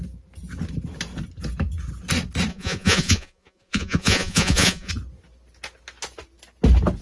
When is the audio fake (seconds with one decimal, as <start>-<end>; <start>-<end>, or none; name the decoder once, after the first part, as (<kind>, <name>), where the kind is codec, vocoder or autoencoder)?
2.5-4.9 (vocoder, Vocos)